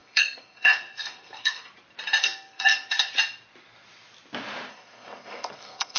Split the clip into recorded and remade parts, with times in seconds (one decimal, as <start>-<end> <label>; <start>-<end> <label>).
0.0-1.7 remade; 1.7-2.2 recorded; 2.2-3.1 remade; 3.1-4.7 recorded; 4.7-6.0 remade